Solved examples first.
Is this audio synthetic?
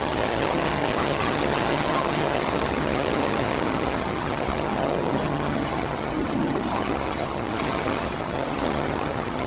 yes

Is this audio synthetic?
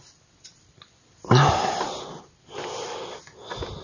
no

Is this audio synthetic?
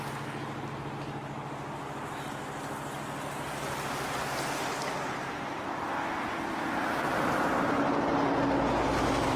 no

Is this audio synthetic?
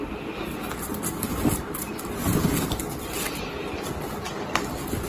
no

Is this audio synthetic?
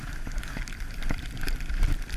no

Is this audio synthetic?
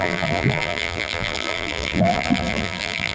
yes